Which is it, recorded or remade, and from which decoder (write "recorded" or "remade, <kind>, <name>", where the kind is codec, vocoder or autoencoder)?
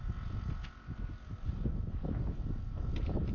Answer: recorded